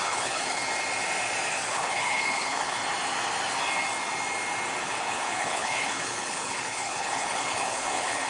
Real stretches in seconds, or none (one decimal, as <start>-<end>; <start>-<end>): 0.6-1.7; 2.8-4.8